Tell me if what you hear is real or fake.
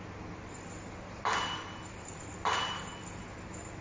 fake